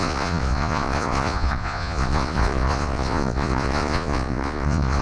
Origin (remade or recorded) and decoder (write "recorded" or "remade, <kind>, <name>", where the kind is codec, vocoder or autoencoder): remade, vocoder, Vocos